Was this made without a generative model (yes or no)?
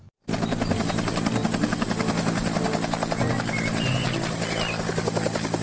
yes